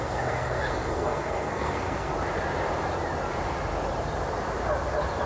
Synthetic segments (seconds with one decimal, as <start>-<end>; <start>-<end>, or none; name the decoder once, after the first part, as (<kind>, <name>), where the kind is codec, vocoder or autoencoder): 0.0-2.1 (codec, SNAC)

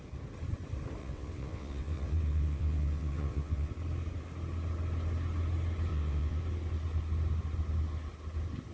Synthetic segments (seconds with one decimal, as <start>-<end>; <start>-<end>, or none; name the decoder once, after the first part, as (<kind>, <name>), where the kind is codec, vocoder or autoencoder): 1.0-3.7 (vocoder, WaveNeXt); 5.9-6.4

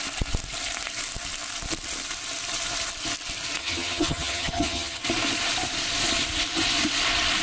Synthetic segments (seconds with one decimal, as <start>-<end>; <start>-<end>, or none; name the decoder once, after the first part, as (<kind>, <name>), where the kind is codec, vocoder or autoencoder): 3.6-5.0 (vocoder, HiFi-GAN)